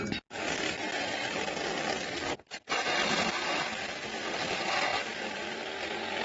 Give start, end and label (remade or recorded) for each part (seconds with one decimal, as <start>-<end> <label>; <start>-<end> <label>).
0.0-6.2 recorded